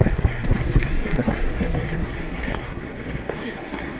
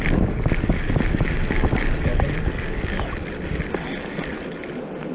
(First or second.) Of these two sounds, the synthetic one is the first